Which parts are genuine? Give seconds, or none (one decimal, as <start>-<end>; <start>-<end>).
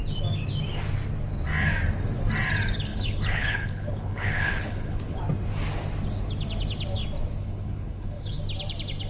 0.0-2.9; 5.2-7.4; 8.4-9.1